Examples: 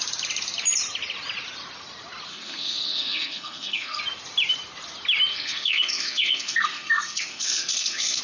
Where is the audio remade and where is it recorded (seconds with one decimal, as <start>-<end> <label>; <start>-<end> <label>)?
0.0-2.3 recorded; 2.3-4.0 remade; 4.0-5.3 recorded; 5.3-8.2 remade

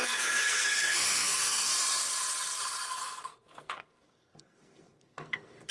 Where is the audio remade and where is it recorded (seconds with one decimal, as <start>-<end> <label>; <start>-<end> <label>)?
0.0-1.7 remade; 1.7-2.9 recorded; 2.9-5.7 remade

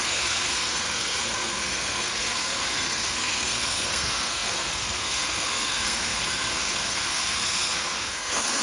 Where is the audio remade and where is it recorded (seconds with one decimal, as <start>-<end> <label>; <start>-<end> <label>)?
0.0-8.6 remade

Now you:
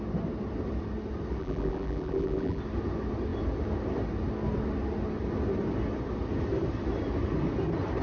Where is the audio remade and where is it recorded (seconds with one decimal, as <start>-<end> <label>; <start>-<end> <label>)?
0.0-1.4 recorded; 1.4-2.6 remade; 2.6-8.0 recorded